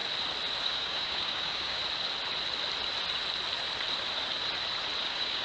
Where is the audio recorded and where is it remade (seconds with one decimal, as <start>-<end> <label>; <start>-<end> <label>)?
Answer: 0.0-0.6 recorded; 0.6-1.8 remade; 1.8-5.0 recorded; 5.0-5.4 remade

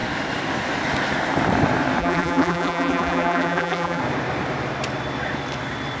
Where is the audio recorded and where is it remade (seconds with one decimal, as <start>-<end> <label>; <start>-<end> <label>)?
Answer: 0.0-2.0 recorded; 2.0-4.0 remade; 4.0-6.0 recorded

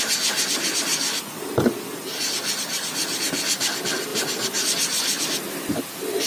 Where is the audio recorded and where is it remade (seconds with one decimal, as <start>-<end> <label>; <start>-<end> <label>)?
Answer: 0.0-6.3 recorded

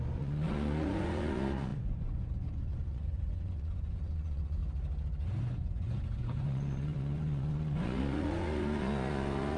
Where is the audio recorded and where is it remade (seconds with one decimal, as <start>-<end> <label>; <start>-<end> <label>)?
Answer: 0.0-4.6 remade; 4.6-5.4 recorded; 5.4-9.6 remade

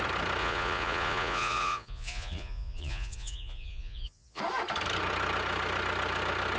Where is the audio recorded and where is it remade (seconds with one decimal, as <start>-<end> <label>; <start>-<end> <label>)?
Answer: 0.0-0.4 recorded; 0.4-4.4 remade; 4.4-6.6 recorded

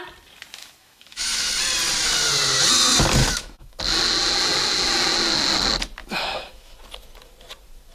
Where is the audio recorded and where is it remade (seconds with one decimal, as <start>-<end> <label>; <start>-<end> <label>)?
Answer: 0.0-0.6 recorded; 0.6-1.5 remade; 1.5-3.2 recorded; 3.2-3.8 remade; 3.8-6.0 recorded; 6.0-6.7 remade; 6.7-7.9 recorded

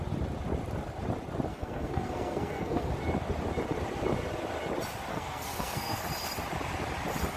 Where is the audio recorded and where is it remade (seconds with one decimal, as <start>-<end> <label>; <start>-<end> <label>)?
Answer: 0.0-1.5 recorded; 1.5-2.9 remade; 2.9-5.1 recorded; 5.1-6.0 remade; 6.0-7.4 recorded

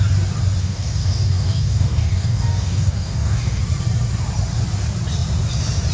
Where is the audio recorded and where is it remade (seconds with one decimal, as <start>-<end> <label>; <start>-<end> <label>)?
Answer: 0.0-0.6 recorded; 0.6-3.6 remade; 3.6-5.9 recorded